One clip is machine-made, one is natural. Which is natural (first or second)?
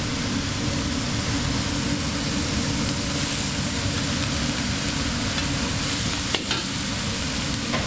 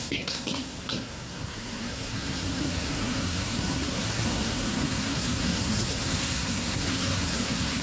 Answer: first